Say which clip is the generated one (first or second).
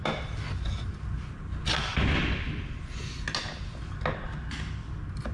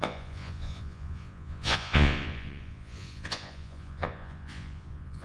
second